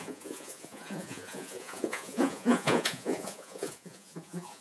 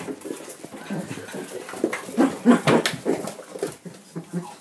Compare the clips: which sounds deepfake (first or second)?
first